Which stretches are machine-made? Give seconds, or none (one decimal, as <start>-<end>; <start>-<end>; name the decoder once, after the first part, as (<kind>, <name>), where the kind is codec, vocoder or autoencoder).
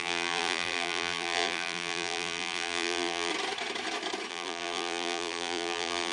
0.0-3.3 (vocoder, BigVGAN v2); 4.3-6.1